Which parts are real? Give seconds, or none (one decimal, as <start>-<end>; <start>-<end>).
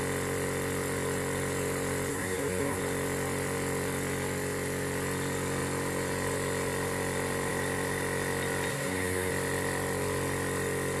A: 0.0-2.1; 2.8-8.7; 9.3-11.0